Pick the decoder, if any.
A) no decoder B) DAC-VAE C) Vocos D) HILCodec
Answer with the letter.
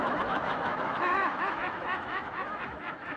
B